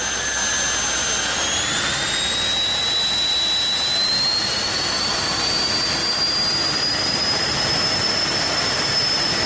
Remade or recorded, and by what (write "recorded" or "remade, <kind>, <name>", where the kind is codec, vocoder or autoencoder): recorded